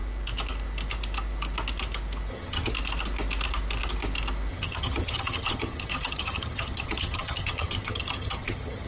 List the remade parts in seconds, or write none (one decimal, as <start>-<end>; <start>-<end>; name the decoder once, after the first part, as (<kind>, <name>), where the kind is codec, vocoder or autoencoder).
2.3-2.7 (vocoder, HiFi-GAN); 4.5-8.9